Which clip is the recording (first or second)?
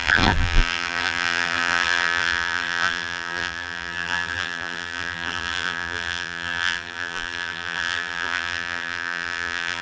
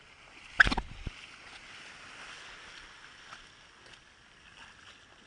second